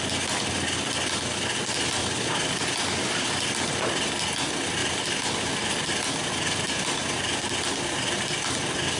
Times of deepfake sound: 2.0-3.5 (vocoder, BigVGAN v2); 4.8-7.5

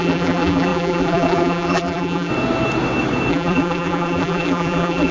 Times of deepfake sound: 0.0-2.3 (vocoder, BigVGAN v2); 3.3-5.1

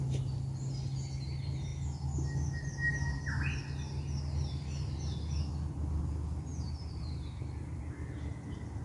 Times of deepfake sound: 6.5-7.8 (vocoder, BigVGAN v2)

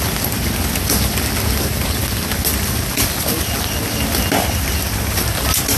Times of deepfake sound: none

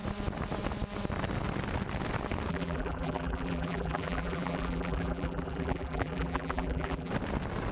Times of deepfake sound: 2.5-7.1 (vocoder, BigVGAN v2)

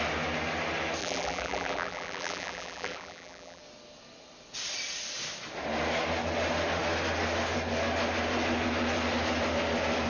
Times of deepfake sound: 1.0-3.6 (vocoder, BigVGAN v2)

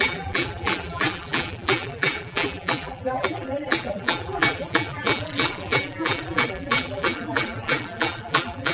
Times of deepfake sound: 0.0-8.7 (vocoder, BigVGAN v2)

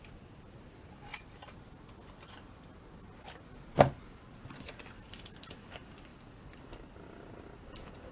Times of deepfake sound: 0.0-1.1 (vocoder, BigVGAN v2); 4.1-8.1